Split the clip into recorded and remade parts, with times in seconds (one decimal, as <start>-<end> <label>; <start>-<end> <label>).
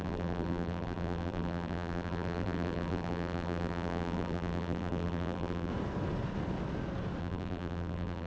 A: 0.0-5.7 remade; 5.7-7.2 recorded; 7.2-8.3 remade